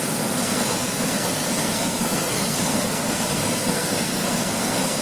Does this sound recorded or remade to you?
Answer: remade